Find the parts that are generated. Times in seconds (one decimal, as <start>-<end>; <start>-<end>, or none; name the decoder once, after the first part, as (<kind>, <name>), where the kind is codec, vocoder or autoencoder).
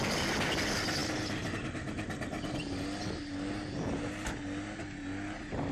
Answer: none